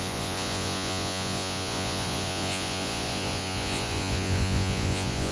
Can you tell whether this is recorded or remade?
remade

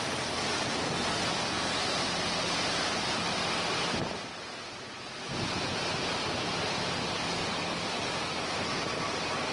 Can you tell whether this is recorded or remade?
recorded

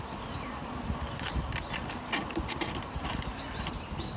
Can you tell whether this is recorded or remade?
remade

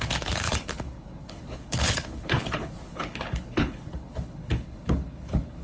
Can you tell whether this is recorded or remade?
remade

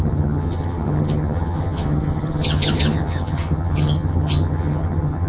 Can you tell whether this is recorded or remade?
remade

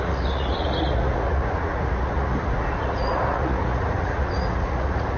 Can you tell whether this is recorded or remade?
remade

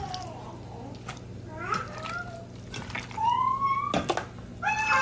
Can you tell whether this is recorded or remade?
recorded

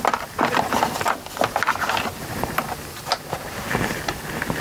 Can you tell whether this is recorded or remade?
recorded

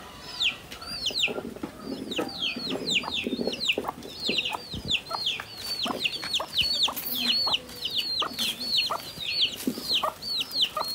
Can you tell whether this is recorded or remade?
recorded